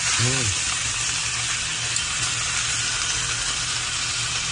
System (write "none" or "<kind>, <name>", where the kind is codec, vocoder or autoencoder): none